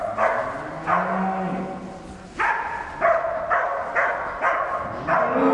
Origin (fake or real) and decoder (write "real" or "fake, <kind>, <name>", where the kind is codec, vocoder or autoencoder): real